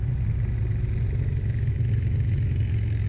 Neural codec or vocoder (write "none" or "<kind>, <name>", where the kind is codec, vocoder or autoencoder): none